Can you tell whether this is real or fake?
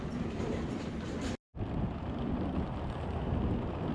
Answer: real